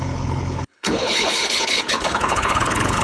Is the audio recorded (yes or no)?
no